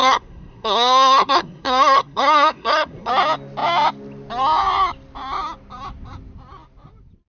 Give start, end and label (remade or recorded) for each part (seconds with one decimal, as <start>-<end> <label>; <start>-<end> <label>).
0.0-3.1 remade; 3.1-7.3 recorded